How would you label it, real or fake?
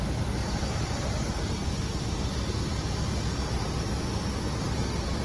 real